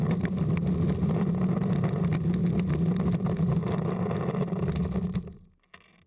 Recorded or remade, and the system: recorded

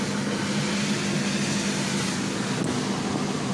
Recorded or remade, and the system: recorded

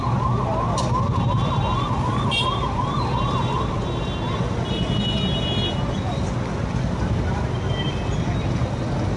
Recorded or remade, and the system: recorded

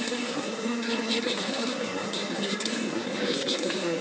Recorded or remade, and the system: remade, codec, SNAC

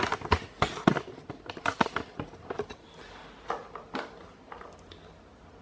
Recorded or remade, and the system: recorded